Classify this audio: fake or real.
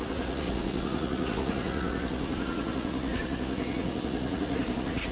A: fake